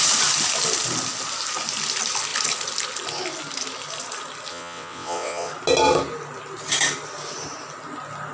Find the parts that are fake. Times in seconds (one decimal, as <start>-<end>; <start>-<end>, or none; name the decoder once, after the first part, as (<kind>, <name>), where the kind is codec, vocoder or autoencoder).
4.5-5.5 (vocoder, WaveNeXt)